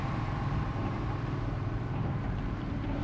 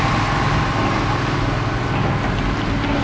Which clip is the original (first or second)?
second